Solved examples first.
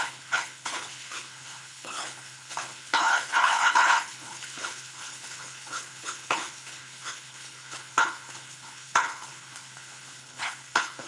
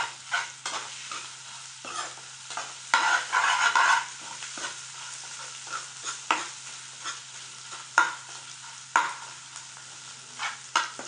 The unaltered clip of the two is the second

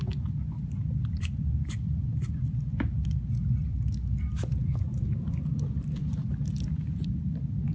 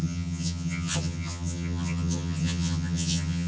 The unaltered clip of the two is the first